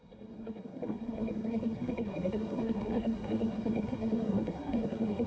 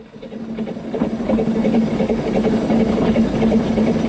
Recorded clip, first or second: second